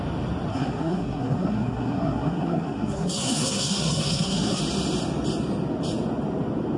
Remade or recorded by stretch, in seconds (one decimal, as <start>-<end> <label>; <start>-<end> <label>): 0.0-0.5 recorded; 0.5-4.6 remade; 4.6-6.8 recorded